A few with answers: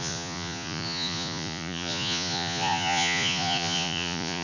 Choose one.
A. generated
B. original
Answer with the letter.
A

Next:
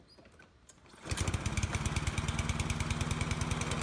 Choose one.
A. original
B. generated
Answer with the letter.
A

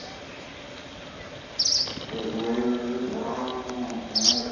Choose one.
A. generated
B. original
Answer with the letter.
B